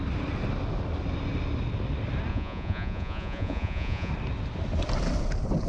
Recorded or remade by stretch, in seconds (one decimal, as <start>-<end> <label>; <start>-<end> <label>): 0.0-2.3 recorded; 2.3-4.1 remade; 4.1-5.7 recorded